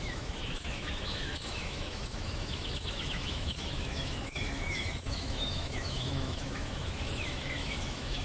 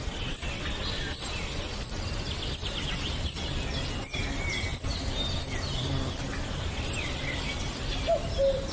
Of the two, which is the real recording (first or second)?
second